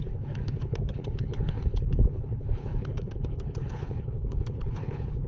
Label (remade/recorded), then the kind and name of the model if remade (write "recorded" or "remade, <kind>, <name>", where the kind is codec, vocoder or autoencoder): remade, codec, HILCodec